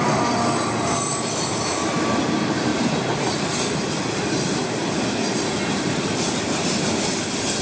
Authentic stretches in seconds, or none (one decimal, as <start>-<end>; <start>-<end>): 0.0-7.6